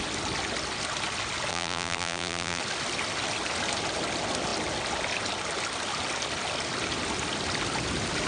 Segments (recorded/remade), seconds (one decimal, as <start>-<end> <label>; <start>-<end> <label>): 0.0-1.5 recorded; 1.5-2.6 remade; 2.6-8.3 recorded